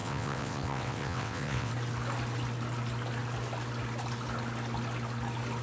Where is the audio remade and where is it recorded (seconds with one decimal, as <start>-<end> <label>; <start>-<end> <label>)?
0.0-1.7 remade; 1.7-5.6 recorded